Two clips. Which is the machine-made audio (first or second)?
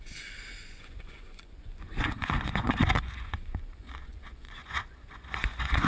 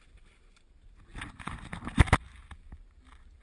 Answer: first